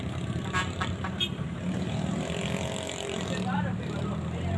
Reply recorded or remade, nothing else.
remade